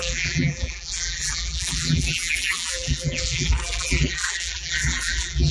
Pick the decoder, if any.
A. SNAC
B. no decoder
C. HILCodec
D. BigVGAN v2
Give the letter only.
D